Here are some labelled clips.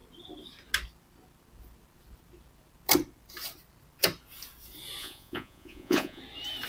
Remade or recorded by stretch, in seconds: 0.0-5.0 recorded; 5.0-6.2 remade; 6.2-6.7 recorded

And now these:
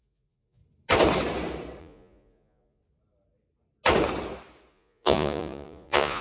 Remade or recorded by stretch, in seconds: 0.0-0.6 remade; 0.6-1.8 recorded; 1.8-2.8 remade; 2.8-4.7 recorded; 4.7-6.2 remade

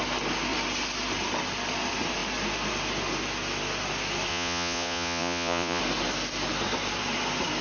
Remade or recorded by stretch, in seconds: 0.0-4.3 recorded; 4.3-5.8 remade; 5.8-7.6 recorded